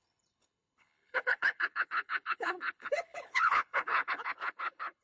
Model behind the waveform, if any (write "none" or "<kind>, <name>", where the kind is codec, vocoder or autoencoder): codec, HILCodec